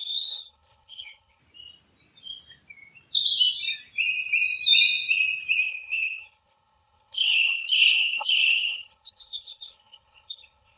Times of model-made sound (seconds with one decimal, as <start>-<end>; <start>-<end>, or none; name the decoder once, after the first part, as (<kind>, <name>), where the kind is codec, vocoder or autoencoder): 0.0-1.4 (codec, HILCodec); 5.6-10.8